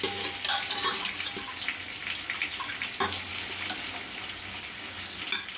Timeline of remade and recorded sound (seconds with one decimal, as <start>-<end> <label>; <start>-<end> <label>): 0.0-5.6 recorded